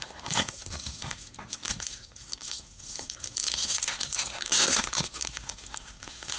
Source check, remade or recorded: remade